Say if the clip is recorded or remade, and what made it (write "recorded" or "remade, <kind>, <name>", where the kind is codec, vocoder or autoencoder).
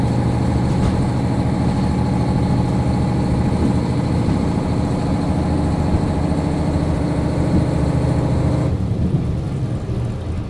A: recorded